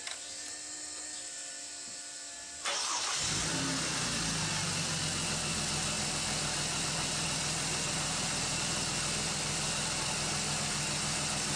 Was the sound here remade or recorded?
recorded